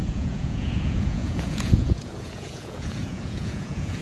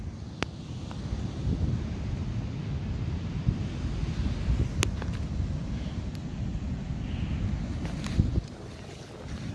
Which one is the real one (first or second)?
second